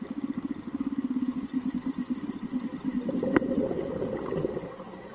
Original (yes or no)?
yes